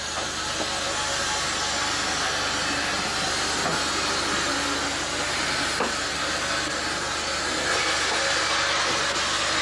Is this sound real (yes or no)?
yes